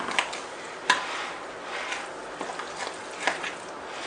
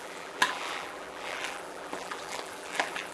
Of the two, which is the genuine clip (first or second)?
first